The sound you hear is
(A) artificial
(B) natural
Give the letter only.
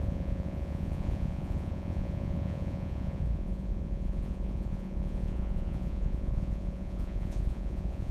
A